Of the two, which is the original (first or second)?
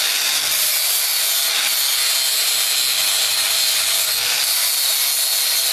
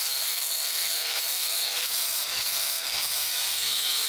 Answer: first